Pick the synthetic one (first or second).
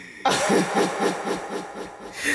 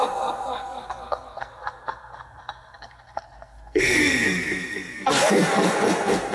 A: second